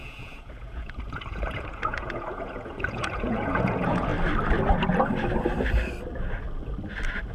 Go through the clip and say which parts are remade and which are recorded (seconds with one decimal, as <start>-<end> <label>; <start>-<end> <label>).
0.0-4.1 remade; 4.1-7.3 recorded